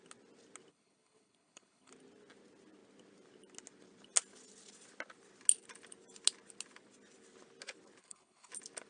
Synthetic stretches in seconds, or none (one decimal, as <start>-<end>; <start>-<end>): 0.7-1.9; 8.0-8.5